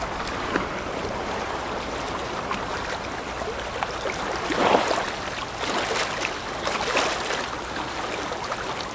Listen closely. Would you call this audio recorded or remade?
recorded